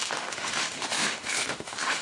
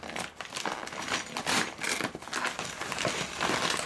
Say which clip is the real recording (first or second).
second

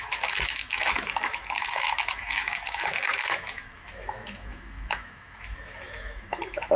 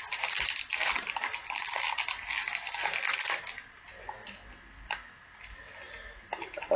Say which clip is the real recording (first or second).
second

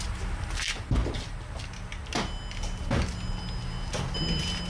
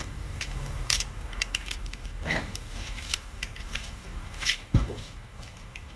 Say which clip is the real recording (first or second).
first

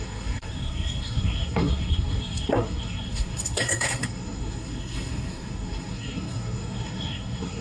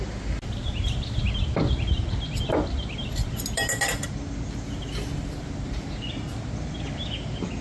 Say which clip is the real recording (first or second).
second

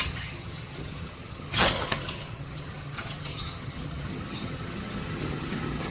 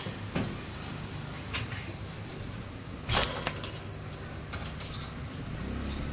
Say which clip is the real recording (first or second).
second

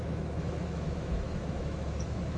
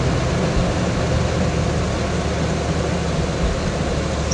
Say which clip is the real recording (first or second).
second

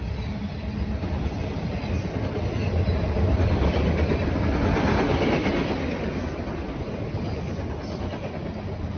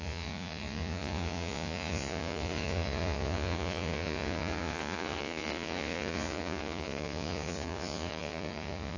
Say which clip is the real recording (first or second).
first